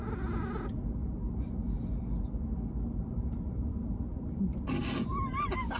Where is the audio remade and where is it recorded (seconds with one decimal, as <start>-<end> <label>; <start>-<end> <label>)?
0.0-1.9 recorded; 1.9-4.4 remade; 4.4-5.1 recorded; 5.1-5.8 remade